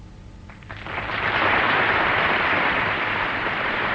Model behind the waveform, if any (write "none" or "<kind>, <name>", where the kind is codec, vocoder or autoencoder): none